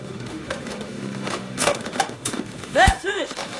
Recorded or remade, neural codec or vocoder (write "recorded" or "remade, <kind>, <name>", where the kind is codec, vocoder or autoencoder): remade, autoencoder, DAC-VAE